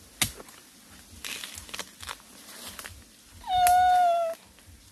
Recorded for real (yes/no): yes